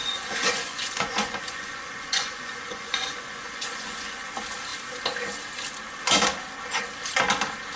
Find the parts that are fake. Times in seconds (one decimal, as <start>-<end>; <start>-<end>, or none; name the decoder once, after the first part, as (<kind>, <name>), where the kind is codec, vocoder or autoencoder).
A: 0.0-4.3 (vocoder, Vocos)